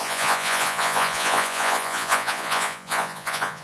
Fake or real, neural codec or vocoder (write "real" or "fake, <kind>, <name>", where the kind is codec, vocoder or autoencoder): fake, vocoder, Vocos